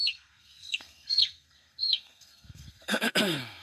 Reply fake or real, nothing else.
fake